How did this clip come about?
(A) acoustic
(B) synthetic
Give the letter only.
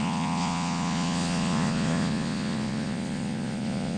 B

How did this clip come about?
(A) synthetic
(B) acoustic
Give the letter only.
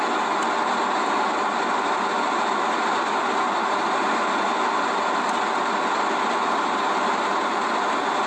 B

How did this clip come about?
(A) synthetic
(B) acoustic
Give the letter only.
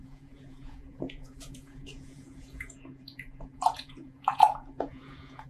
A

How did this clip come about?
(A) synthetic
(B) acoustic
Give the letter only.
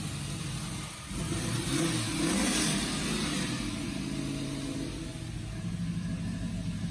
B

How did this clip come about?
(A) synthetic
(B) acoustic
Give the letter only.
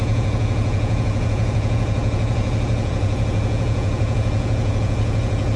A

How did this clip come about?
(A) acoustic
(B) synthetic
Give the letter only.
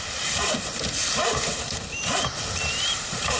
A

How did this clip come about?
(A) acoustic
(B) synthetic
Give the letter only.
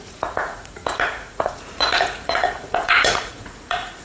B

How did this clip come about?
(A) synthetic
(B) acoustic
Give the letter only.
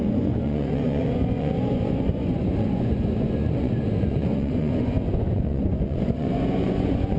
A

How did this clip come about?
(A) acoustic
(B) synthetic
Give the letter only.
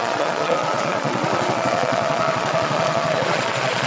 B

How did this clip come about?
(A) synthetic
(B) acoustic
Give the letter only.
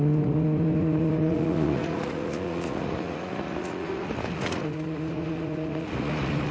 A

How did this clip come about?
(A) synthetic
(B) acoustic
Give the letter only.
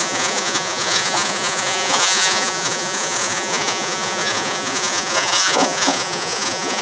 A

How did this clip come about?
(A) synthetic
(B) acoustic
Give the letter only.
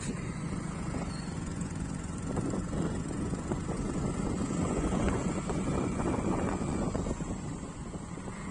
A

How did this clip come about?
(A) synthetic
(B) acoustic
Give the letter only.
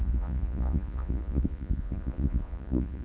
A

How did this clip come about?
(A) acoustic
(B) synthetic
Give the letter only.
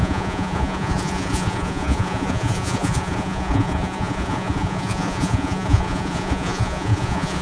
B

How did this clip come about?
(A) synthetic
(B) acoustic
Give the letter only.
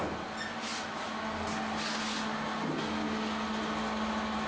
B